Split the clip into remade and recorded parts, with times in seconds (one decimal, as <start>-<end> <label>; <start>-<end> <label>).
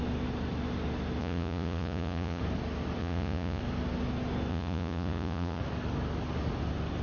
0.0-1.2 recorded; 1.2-2.4 remade; 2.4-3.0 recorded; 3.0-3.6 remade; 3.6-4.5 recorded; 4.5-5.6 remade; 5.6-7.0 recorded